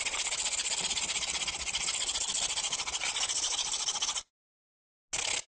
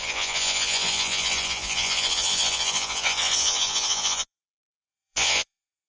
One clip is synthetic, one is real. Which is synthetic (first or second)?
second